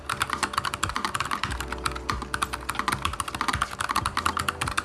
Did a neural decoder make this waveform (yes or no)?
no